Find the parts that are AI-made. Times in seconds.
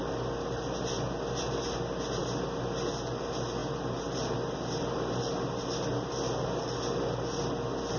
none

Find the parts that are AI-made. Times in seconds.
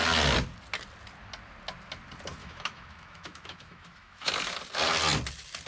2.4-4.3 (autoencoder, DAC-VAE)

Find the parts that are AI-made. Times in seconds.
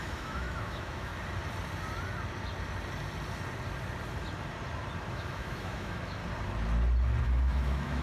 0.0-1.1 (autoencoder, DAC-VAE); 5.1-6.2; 7.2-8.0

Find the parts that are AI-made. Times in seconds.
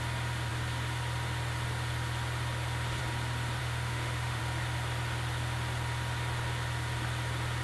3.6-4.4 (autoencoder, DAC-VAE)